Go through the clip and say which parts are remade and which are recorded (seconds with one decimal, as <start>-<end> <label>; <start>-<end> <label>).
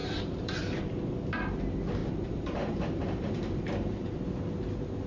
0.0-0.5 remade; 0.5-2.0 recorded; 2.0-4.1 remade; 4.1-5.1 recorded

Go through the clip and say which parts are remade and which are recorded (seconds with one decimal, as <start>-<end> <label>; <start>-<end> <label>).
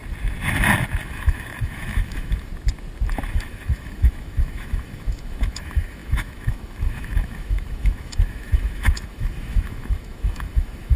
0.0-1.0 recorded; 1.0-2.5 remade; 2.5-3.3 recorded; 3.3-11.0 remade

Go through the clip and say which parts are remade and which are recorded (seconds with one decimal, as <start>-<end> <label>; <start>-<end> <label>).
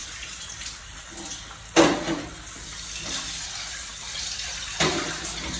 0.0-5.6 recorded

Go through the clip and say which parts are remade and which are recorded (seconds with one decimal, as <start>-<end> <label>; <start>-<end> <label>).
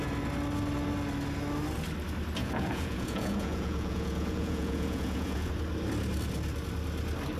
0.0-2.4 recorded; 2.4-5.5 remade; 5.5-7.4 recorded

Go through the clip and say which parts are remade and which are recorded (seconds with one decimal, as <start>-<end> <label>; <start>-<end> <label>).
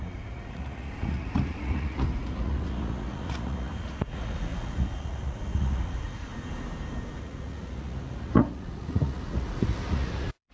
0.0-6.3 remade; 6.3-7.2 recorded; 7.2-10.5 remade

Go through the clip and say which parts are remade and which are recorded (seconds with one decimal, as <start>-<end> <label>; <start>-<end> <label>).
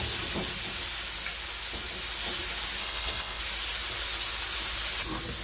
0.0-2.8 recorded; 2.8-3.4 remade; 3.4-5.4 recorded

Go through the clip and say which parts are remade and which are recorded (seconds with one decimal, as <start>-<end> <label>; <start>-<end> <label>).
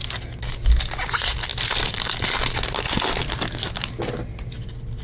0.0-5.0 recorded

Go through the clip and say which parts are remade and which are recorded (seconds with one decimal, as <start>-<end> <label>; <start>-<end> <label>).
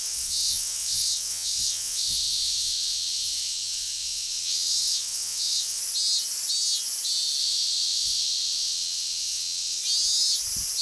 0.0-5.8 remade; 5.8-7.4 recorded; 7.4-9.8 remade; 9.8-10.8 recorded